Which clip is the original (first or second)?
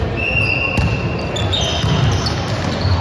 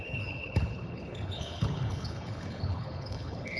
first